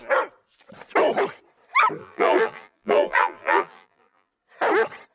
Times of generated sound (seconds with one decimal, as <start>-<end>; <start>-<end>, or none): 2.0-4.3